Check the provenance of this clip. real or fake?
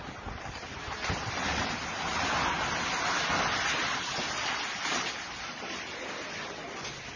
real